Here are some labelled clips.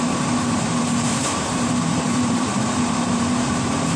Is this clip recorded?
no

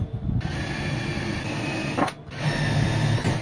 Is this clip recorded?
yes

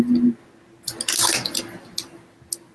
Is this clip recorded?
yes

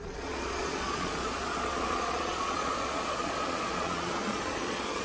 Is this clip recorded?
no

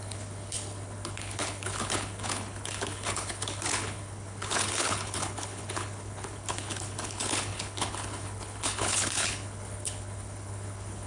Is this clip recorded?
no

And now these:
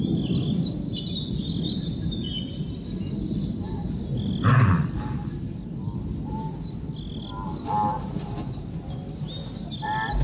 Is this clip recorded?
yes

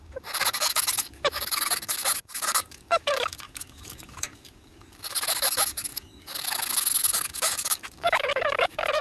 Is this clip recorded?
no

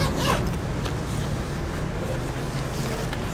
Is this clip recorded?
yes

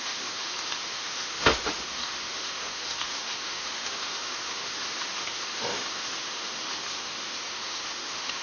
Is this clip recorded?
no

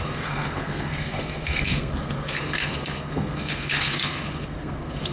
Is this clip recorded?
no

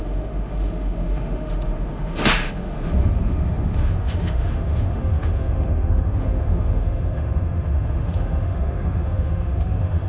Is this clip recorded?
no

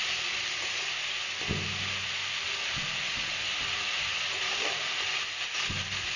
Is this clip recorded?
yes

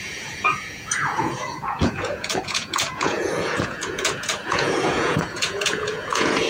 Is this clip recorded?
no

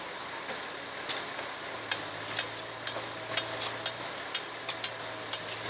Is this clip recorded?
yes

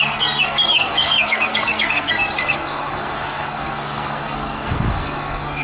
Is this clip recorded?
no